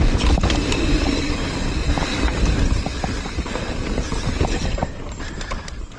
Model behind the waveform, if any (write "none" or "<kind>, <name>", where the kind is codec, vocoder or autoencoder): vocoder, BigVGAN v2